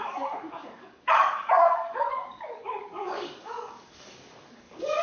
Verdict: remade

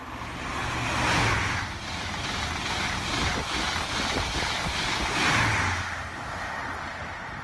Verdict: recorded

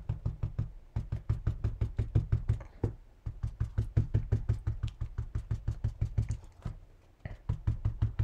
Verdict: recorded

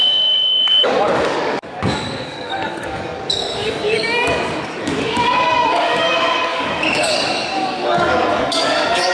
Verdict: remade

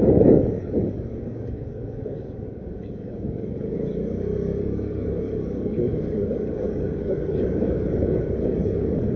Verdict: remade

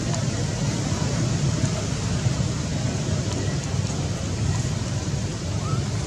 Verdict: recorded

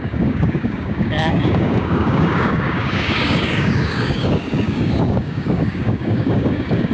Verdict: remade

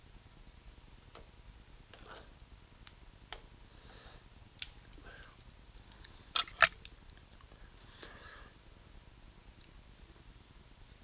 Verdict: recorded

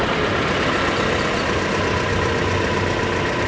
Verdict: recorded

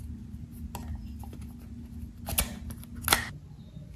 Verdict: recorded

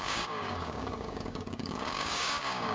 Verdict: remade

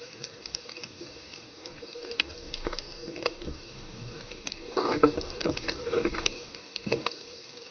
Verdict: remade